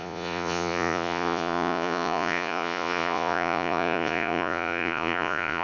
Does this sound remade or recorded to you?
remade